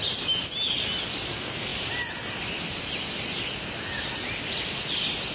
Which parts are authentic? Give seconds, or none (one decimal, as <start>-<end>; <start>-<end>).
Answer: 0.0-5.3